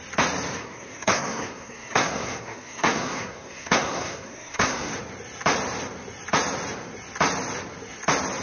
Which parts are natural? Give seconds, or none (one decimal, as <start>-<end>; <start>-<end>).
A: 0.0-0.6; 4.9-8.4